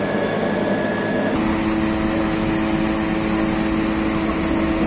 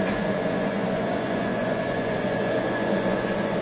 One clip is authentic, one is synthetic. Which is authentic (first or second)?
first